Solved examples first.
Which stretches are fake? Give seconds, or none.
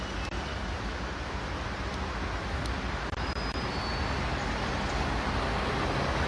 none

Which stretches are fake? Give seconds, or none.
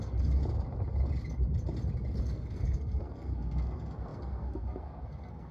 0.0-0.4 (codec, SNAC); 2.2-5.5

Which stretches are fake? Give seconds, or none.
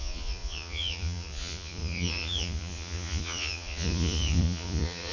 0.0-5.1 (vocoder, Vocos)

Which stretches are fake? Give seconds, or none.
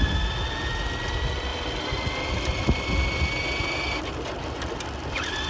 none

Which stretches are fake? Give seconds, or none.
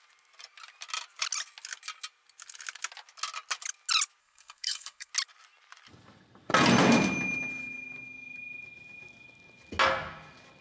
4.2-5.1 (codec, SNAC)